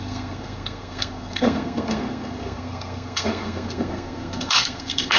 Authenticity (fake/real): fake